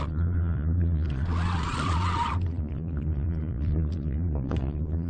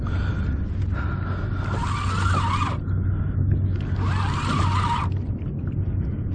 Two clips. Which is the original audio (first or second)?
second